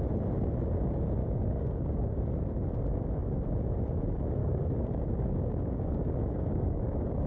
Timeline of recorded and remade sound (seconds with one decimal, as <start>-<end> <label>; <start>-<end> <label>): 0.0-1.2 recorded; 1.2-2.2 remade; 2.2-4.4 recorded; 4.4-7.3 remade